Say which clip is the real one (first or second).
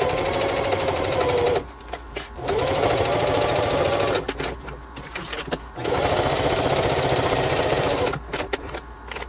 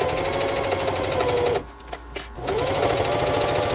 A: second